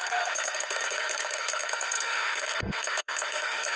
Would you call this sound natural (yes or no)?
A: no